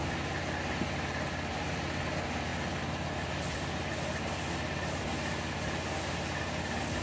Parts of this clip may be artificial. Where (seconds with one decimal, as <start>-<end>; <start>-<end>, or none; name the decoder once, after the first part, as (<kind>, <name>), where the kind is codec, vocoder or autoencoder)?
none